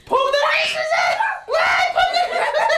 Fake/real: fake